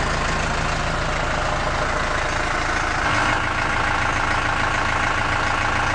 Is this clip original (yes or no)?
yes